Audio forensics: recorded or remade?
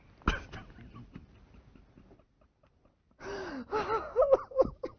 recorded